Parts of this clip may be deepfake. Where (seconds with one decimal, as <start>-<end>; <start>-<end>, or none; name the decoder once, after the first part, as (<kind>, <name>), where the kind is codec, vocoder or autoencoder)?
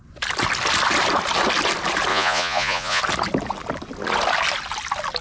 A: 2.1-3.0 (vocoder, Vocos)